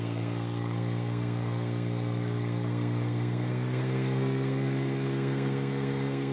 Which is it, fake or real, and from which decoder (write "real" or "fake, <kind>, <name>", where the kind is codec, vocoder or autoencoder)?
fake, codec, SNAC